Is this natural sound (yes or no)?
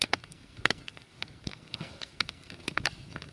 no